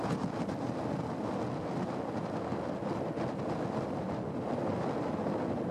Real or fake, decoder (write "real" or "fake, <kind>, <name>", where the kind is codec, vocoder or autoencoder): real